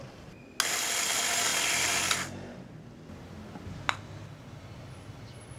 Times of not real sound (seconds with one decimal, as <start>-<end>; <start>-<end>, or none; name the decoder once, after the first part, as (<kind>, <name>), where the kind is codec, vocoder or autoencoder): none